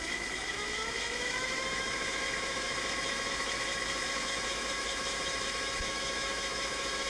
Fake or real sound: fake